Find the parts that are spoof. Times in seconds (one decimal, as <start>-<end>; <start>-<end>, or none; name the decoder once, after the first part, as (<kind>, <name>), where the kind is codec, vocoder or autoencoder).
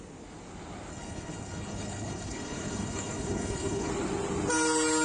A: 0.9-3.9 (codec, HILCodec)